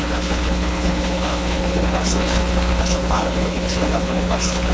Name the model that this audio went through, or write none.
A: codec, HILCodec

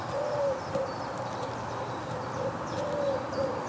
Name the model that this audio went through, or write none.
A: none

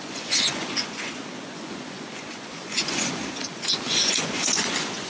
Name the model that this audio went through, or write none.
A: vocoder, Vocos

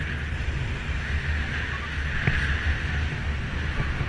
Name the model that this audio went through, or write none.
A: none